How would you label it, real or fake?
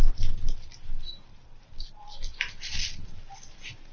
real